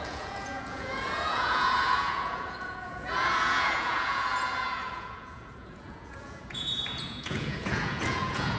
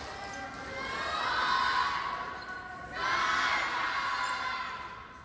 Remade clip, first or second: first